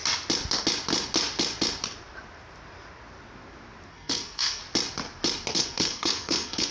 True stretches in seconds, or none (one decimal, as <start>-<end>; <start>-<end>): 0.0-3.9; 4.6-5.5